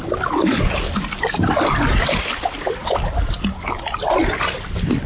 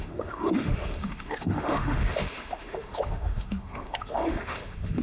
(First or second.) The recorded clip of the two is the first